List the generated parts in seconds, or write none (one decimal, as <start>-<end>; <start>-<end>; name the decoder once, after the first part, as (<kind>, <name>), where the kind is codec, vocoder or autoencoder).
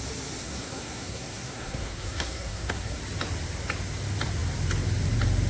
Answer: 0.4-3.0 (codec, SNAC)